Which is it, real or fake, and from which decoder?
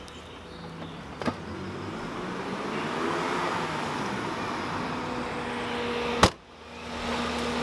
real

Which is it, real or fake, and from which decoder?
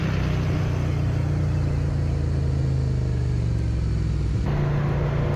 real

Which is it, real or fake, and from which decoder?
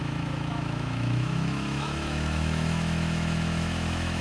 fake, autoencoder, DAC-VAE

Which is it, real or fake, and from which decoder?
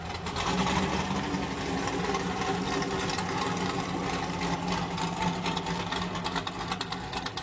real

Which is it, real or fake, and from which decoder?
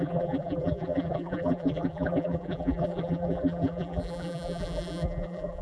fake, vocoder, BigVGAN v2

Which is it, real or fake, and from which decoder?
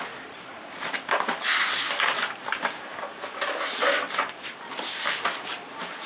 real